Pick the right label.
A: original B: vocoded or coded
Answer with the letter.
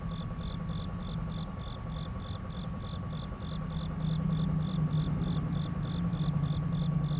A